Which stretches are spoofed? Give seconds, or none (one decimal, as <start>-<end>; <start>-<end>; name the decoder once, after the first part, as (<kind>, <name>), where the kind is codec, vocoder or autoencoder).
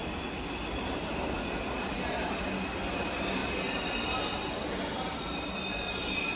none